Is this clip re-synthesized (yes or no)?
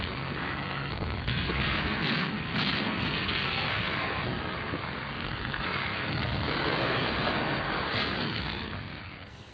yes